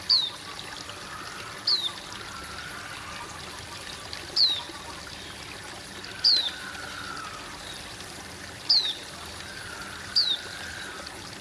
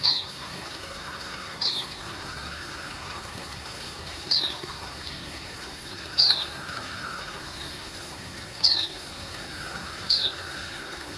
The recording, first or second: first